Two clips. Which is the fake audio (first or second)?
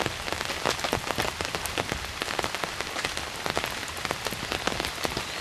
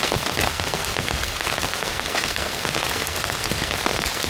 second